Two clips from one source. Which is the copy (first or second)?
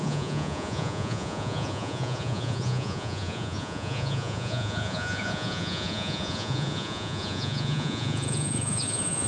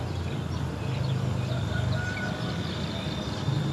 first